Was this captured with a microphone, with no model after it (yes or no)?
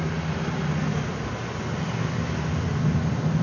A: yes